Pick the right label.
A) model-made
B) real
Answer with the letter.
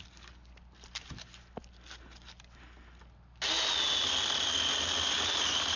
B